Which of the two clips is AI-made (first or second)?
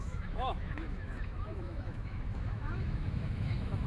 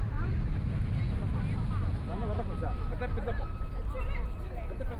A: first